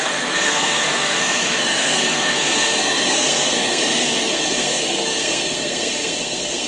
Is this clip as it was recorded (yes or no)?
no